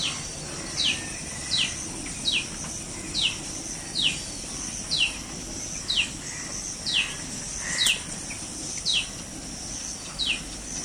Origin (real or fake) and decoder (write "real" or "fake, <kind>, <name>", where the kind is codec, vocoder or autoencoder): real